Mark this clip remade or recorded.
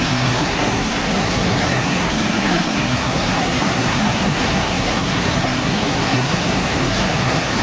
remade